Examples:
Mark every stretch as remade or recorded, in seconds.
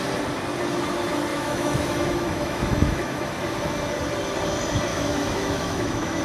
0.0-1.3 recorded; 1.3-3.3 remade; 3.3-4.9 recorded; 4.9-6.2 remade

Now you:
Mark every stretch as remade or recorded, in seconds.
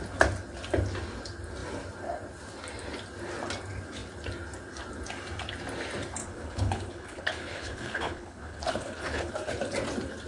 0.0-6.2 recorded; 6.2-9.3 remade; 9.3-10.3 recorded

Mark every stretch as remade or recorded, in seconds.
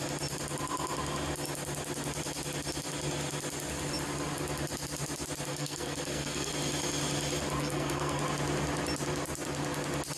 0.0-5.5 recorded; 5.5-6.5 remade; 6.5-7.6 recorded; 7.6-8.2 remade; 8.2-10.2 recorded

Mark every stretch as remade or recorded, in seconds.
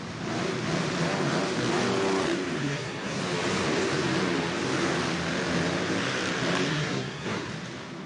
0.0-2.6 recorded; 2.6-3.2 remade; 3.2-6.7 recorded; 6.7-7.5 remade; 7.5-8.1 recorded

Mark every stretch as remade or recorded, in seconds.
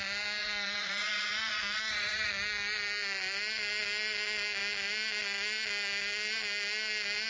0.0-0.4 recorded; 0.4-2.3 remade; 2.3-7.3 recorded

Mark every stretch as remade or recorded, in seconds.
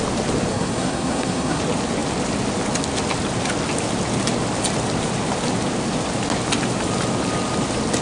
0.0-0.5 recorded; 0.5-1.6 remade; 1.6-8.0 recorded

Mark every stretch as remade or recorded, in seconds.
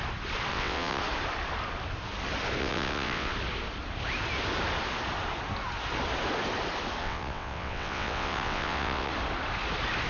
0.0-0.5 recorded; 0.5-1.0 remade; 1.0-2.6 recorded; 2.6-3.3 remade; 3.3-7.0 recorded; 7.0-9.1 remade; 9.1-10.1 recorded